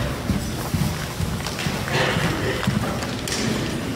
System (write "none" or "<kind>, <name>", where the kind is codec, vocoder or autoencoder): none